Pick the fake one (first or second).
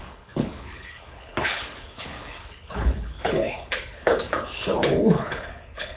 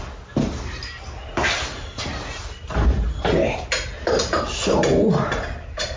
first